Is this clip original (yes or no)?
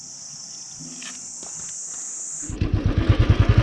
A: yes